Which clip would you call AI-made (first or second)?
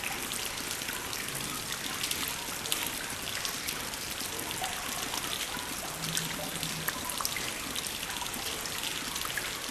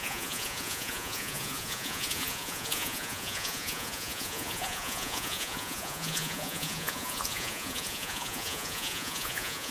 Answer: second